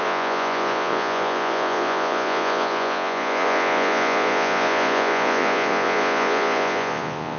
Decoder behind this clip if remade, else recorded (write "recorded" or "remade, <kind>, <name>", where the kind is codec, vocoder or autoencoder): remade, vocoder, Vocos